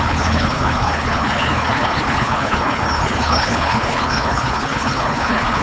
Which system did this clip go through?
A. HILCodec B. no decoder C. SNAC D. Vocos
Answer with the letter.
A